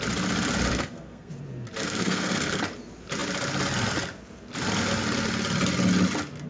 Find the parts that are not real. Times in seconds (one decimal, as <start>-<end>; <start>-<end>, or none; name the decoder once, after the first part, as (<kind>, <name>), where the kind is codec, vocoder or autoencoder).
0.7-1.3 (codec, SNAC); 1.8-2.6